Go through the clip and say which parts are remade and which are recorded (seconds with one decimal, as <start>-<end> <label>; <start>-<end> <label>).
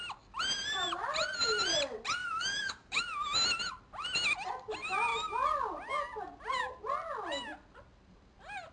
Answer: 0.0-2.2 recorded; 2.2-3.0 remade; 3.0-8.7 recorded